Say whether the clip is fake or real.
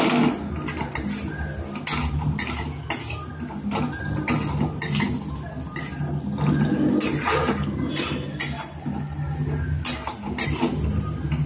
real